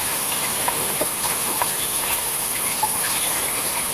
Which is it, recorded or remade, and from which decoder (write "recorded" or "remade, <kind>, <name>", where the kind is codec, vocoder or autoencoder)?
remade, autoencoder, DAC-VAE